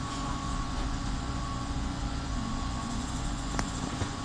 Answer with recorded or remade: remade